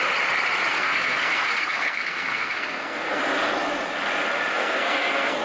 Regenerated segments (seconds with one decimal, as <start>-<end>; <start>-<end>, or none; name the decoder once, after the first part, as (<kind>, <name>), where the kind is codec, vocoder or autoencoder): 0.7-3.2 (codec, SNAC); 4.5-5.4